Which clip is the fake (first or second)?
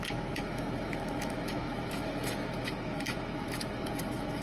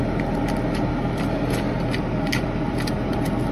first